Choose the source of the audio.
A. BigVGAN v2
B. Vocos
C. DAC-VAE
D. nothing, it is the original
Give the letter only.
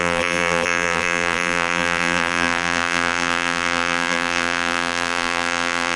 A